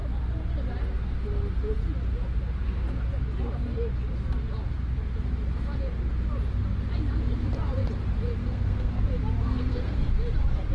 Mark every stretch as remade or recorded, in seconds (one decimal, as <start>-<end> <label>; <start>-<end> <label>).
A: 0.0-8.4 recorded; 8.4-9.0 remade; 9.0-9.4 recorded; 9.4-10.1 remade; 10.1-10.7 recorded